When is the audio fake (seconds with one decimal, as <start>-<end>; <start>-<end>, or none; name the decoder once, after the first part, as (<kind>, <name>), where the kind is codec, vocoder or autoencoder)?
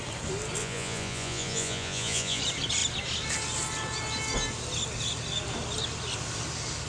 0.6-2.4 (vocoder, Vocos)